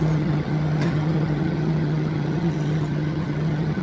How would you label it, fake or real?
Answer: fake